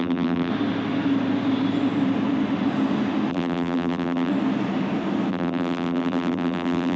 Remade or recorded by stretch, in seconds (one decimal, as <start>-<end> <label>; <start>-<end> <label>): 0.0-0.5 remade; 0.5-3.3 recorded; 3.3-4.3 remade; 4.3-5.3 recorded; 5.3-7.0 remade